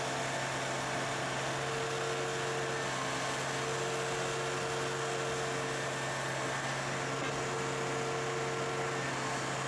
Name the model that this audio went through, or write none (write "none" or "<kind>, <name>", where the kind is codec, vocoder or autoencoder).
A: none